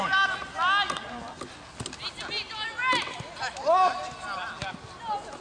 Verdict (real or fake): real